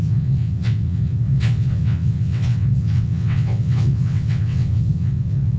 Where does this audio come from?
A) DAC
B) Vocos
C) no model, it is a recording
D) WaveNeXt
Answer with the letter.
D